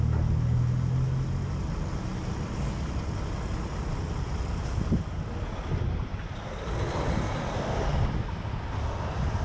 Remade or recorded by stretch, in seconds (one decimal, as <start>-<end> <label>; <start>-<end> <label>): 0.0-6.1 recorded; 6.1-6.7 remade; 6.7-9.4 recorded